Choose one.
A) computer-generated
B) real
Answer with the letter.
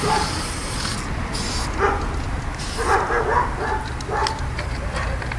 B